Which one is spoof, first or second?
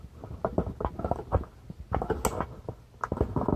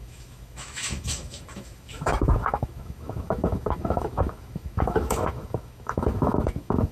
second